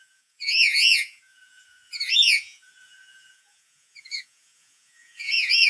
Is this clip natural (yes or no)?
no